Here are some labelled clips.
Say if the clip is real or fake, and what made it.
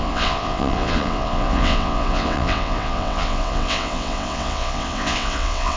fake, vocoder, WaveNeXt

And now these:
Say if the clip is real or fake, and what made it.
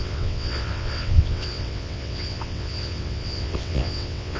fake, vocoder, WaveNeXt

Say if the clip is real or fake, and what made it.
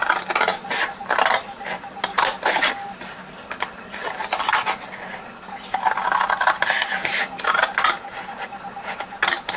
real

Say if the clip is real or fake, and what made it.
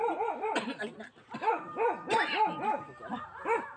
real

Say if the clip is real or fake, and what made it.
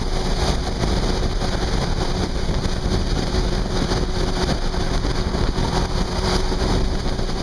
real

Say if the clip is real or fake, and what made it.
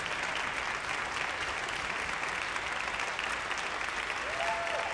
real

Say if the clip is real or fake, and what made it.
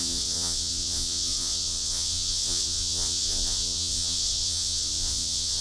fake, vocoder, WaveNeXt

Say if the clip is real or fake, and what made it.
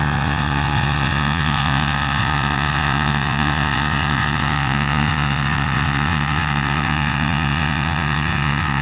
fake, vocoder, WaveNeXt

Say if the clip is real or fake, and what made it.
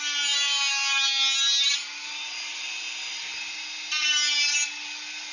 real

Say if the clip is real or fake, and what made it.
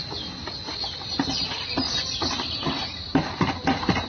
real